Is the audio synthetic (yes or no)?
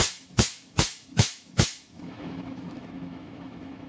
yes